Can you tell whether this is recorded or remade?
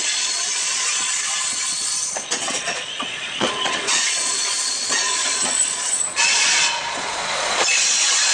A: remade